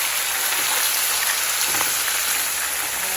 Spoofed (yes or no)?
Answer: no